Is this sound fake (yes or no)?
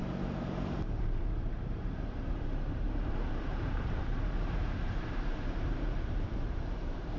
yes